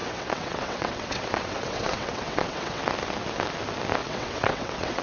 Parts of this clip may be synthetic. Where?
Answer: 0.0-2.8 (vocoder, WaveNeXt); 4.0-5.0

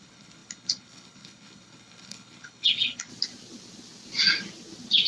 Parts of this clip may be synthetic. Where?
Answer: 0.0-3.1 (codec, HILCodec)

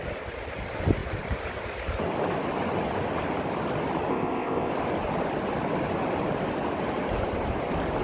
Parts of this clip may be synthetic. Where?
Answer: 4.1-4.7 (codec, ZipCodec)

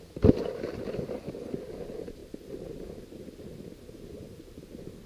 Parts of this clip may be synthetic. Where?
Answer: none

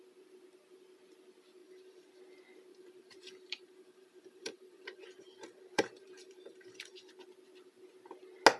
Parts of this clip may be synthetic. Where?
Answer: 1.6-2.2 (vocoder, BigVGAN v2); 2.7-7.1

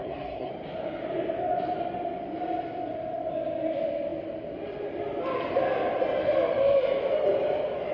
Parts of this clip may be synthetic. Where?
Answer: 0.0-0.5 (codec, SNAC)